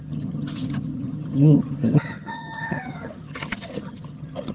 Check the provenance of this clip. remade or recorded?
remade